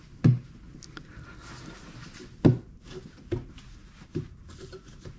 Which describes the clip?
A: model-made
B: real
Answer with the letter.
B